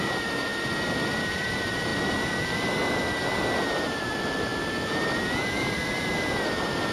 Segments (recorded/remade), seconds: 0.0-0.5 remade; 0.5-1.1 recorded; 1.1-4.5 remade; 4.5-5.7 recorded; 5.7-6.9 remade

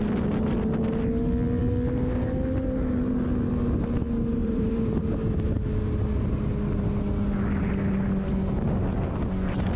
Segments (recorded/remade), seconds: 0.0-4.4 recorded; 4.4-5.3 remade; 5.3-9.8 recorded

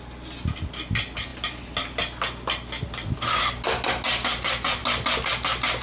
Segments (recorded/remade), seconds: 0.0-5.8 recorded

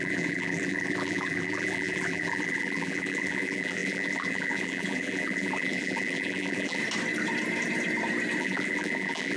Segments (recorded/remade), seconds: 0.0-6.8 remade; 6.8-8.4 recorded; 8.4-9.4 remade

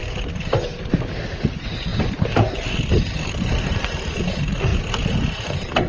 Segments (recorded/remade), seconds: 0.0-0.9 remade; 0.9-4.7 recorded; 4.7-5.4 remade; 5.4-5.9 recorded

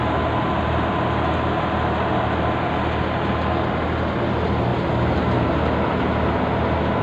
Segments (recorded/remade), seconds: 0.0-7.0 recorded